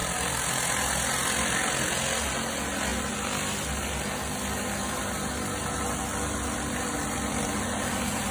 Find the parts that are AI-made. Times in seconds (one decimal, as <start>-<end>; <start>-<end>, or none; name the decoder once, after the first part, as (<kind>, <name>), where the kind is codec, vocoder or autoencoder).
none